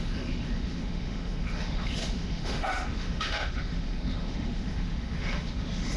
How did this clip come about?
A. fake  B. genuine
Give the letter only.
A